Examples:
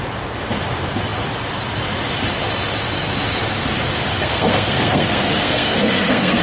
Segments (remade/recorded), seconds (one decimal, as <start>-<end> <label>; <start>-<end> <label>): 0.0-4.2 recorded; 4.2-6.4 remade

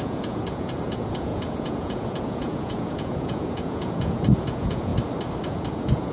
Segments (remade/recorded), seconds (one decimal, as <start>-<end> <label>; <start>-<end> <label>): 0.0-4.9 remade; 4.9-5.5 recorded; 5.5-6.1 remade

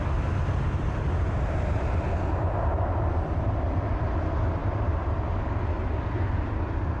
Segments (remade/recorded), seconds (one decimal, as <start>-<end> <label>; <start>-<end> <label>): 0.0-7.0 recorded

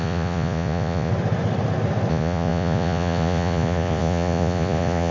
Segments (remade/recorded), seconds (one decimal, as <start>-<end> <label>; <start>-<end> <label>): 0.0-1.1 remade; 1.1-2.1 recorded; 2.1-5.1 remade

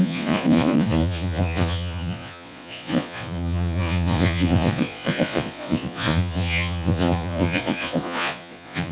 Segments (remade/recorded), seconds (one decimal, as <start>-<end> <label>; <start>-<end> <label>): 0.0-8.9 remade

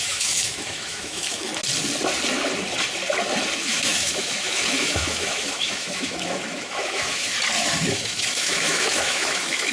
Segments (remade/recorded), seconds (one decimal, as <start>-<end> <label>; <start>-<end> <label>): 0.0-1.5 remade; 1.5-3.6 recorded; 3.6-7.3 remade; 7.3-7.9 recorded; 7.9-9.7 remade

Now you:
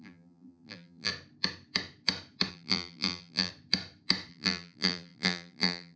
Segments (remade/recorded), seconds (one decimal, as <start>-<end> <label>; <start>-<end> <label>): 0.0-1.1 remade; 1.1-2.5 recorded; 2.5-3.5 remade; 3.5-4.3 recorded; 4.3-6.0 remade

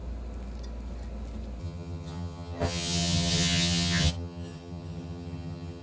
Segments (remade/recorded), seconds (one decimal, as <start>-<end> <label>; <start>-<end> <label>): 0.0-1.6 recorded; 1.6-5.8 remade